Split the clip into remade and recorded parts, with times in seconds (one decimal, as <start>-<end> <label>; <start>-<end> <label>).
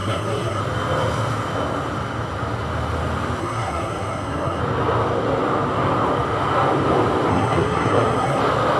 0.0-0.6 remade; 0.6-3.4 recorded; 3.4-4.6 remade; 4.6-7.3 recorded; 7.3-8.4 remade; 8.4-8.8 recorded